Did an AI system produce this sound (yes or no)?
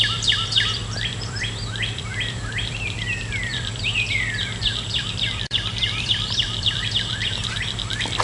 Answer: yes